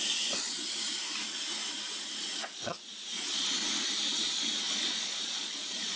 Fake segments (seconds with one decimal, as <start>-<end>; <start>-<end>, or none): 0.0-0.6; 2.2-3.6; 4.1-6.0